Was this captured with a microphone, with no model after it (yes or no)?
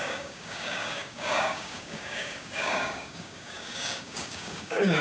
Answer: no